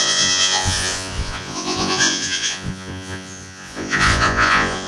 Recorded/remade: remade